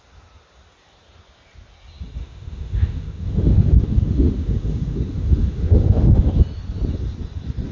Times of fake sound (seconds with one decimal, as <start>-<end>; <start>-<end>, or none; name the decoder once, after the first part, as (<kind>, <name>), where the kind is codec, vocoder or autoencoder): 2.2-6.4 (autoencoder, DAC-VAE)

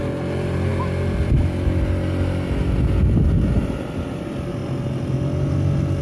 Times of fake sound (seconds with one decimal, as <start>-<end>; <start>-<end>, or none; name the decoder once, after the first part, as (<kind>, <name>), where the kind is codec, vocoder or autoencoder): none

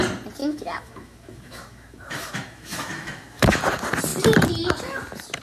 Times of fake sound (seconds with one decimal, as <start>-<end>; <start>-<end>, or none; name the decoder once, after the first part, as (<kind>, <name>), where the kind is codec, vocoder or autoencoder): 0.4-3.6 (autoencoder, DAC-VAE)

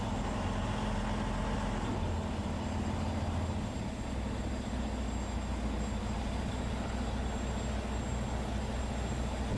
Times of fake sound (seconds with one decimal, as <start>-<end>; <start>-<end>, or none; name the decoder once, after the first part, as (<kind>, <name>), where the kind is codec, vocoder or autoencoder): none

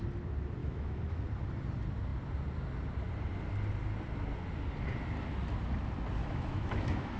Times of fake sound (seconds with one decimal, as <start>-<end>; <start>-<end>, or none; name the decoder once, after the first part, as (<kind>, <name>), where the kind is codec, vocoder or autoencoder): 0.6-1.2 (autoencoder, DAC-VAE); 6.2-7.2

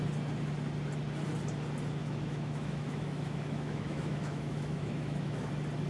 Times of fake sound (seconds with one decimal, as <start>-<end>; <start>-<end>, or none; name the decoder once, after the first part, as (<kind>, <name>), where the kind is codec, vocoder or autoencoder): 2.0-5.5 (autoencoder, DAC-VAE)

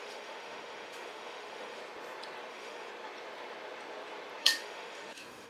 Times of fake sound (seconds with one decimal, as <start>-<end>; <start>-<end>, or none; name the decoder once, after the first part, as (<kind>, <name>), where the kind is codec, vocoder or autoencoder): 0.0-1.8 (autoencoder, DAC-VAE); 2.5-2.9; 4.4-5.5